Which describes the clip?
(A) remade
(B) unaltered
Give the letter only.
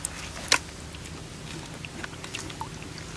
B